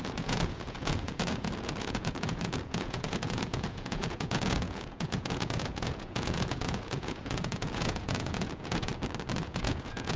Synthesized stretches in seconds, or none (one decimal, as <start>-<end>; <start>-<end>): 0.0-8.9; 9.4-10.2